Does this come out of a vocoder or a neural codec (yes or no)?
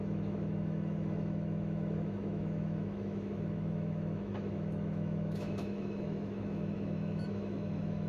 yes